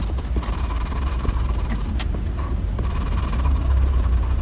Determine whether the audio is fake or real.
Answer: fake